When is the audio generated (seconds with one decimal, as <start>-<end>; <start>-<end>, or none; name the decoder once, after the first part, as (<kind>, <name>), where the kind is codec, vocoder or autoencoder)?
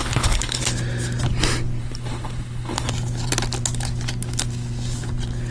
0.0-0.6 (codec, HILCodec); 1.8-2.9